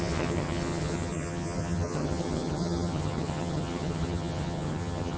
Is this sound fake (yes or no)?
yes